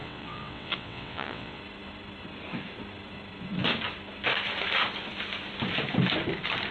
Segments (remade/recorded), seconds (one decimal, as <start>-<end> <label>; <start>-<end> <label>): 0.0-1.6 remade; 1.6-6.7 recorded